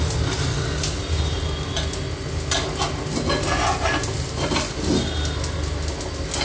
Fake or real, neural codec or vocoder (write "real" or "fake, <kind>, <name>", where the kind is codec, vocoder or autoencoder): real